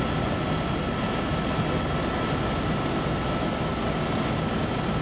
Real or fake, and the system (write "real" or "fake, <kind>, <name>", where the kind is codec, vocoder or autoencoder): real